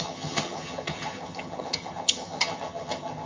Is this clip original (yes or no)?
no